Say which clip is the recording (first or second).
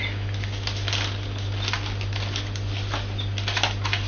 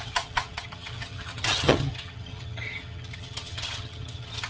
first